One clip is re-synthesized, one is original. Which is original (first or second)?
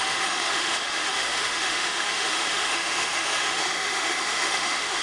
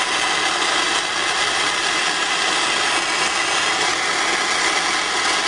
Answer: second